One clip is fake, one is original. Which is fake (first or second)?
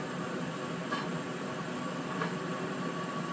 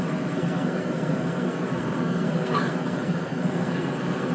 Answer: second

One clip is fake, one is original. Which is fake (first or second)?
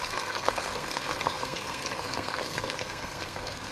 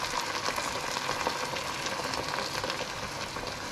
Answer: first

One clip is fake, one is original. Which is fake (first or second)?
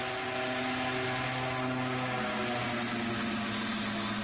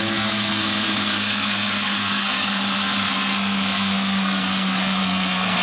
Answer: second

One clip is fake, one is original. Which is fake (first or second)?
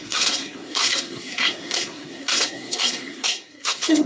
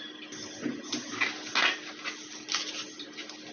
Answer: first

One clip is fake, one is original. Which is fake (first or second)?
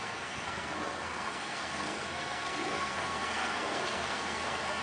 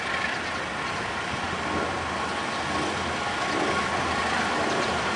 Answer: first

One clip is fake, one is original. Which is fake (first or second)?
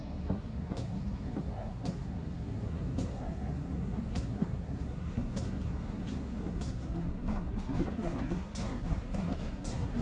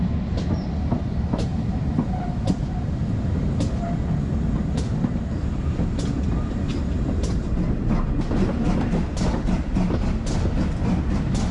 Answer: first